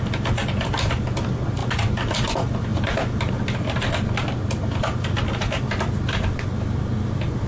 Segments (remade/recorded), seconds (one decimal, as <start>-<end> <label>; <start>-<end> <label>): 0.0-7.5 recorded